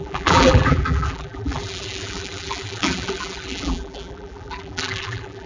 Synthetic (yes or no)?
yes